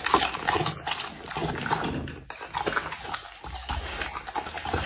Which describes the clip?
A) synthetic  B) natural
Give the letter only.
B